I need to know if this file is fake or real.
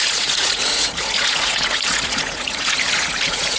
fake